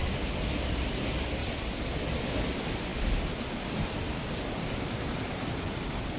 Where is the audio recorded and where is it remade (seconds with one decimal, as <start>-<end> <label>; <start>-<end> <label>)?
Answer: 0.0-6.2 recorded